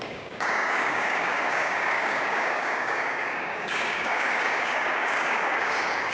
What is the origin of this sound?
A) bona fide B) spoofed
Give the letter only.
B